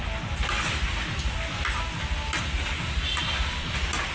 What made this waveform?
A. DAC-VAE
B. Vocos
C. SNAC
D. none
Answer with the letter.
D